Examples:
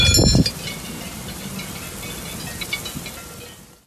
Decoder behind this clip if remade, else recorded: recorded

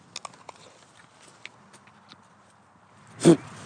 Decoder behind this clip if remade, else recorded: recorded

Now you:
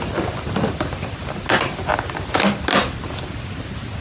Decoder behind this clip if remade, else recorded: recorded